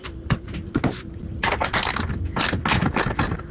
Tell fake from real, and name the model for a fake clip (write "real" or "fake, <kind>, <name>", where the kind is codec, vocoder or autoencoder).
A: real